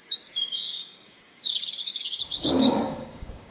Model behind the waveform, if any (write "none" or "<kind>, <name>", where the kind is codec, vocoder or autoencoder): codec, DAC